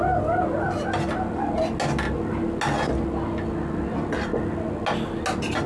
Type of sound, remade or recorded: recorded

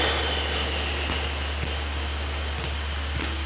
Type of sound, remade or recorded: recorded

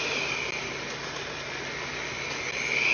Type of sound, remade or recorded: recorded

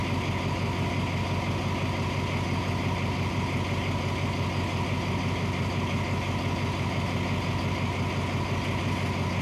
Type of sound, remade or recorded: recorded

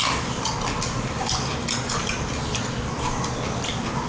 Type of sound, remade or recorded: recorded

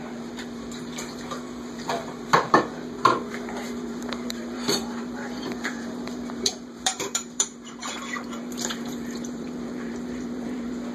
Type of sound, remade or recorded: remade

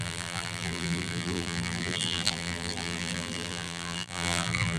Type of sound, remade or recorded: remade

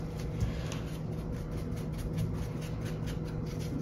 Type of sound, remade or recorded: recorded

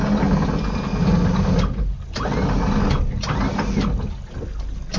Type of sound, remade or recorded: recorded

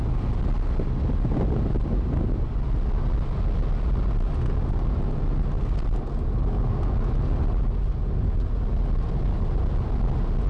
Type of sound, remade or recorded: recorded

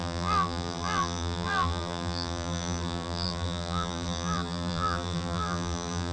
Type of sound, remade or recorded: remade